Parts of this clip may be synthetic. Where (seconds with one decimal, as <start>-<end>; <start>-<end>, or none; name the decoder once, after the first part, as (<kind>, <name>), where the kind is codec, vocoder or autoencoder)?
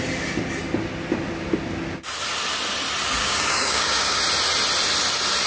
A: 3.2-4.2 (codec, DAC)